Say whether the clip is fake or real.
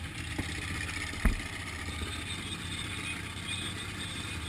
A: real